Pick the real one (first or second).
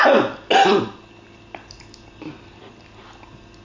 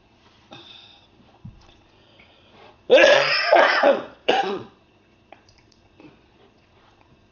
first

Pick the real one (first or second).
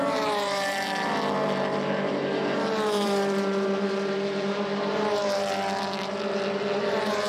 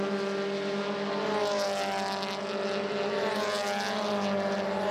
second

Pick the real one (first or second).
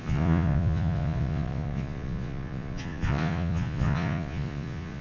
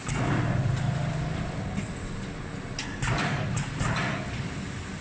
second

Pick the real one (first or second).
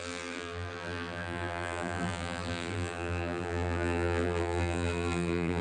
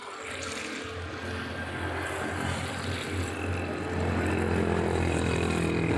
second